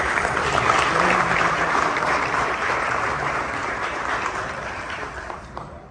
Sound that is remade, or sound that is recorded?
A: remade